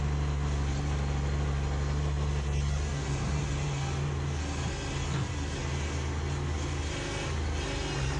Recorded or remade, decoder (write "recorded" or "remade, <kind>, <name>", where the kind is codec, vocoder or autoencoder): recorded